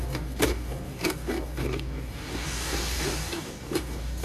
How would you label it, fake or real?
fake